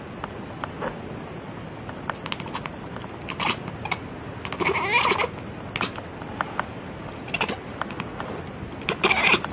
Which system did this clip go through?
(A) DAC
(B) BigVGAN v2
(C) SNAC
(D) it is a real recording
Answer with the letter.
D